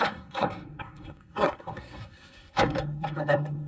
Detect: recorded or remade remade